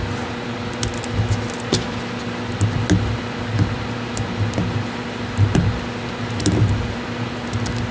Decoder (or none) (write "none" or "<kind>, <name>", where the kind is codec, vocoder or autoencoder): none